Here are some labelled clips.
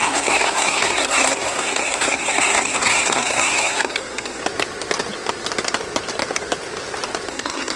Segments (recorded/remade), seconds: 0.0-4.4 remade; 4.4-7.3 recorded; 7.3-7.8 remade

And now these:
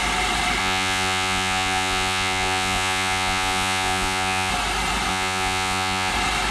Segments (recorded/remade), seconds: 0.0-0.6 recorded; 0.6-4.5 remade; 4.5-5.1 recorded; 5.1-6.1 remade; 6.1-6.5 recorded

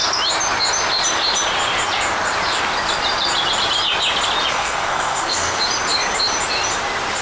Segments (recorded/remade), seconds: 0.0-4.5 recorded; 4.5-5.6 remade; 5.6-7.2 recorded